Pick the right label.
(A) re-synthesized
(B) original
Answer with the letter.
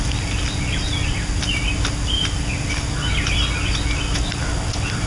B